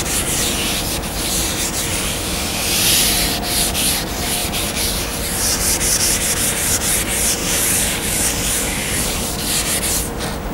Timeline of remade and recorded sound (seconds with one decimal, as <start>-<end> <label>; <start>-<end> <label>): 0.0-1.9 recorded; 1.9-2.6 remade; 2.6-7.4 recorded; 7.4-9.4 remade; 9.4-10.5 recorded